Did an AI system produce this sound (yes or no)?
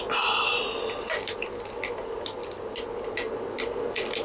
no